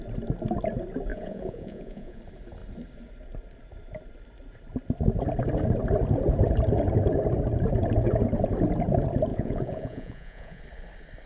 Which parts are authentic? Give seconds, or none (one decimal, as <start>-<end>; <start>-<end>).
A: 0.0-1.1; 2.2-9.3; 10.6-11.3